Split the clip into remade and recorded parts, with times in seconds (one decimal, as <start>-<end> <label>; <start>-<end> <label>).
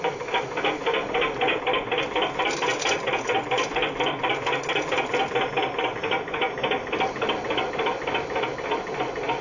0.0-9.4 recorded